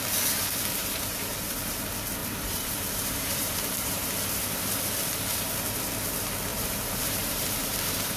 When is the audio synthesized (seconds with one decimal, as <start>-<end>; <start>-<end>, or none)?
0.8-1.7; 2.2-4.1; 6.5-8.2